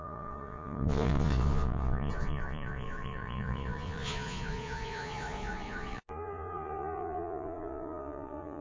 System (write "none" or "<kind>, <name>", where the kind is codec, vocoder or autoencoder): vocoder, Vocos